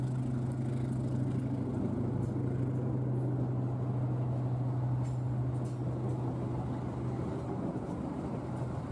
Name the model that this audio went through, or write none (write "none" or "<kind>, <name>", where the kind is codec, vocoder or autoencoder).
none